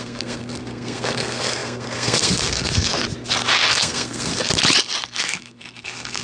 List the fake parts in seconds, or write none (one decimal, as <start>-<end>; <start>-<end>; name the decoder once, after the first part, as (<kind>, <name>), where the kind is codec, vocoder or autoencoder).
0.0-2.9 (codec, SNAC); 3.7-4.3; 5.0-6.2